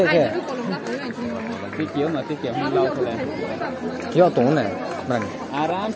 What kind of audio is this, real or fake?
real